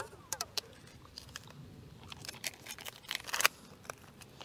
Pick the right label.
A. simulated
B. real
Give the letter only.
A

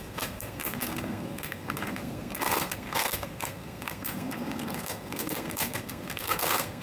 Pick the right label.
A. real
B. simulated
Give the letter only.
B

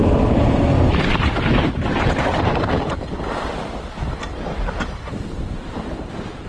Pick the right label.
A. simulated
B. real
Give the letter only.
A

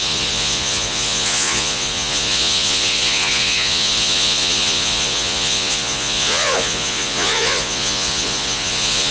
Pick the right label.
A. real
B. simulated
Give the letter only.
B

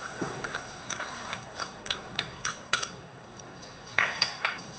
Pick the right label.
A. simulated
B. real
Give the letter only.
A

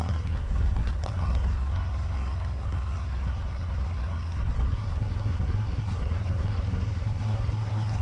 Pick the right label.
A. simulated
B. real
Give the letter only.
A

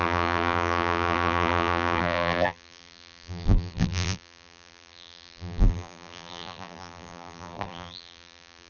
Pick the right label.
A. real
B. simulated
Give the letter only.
B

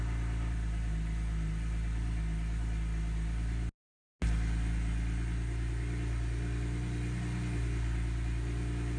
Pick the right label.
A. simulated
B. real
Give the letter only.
B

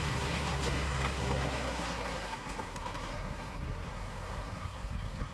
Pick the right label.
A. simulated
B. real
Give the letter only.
A